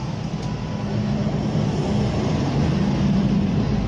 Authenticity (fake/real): real